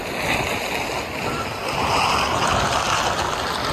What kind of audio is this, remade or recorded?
recorded